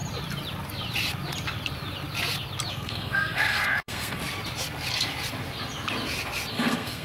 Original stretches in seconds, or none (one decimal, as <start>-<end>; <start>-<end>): 0.0-2.7; 4.2-6.5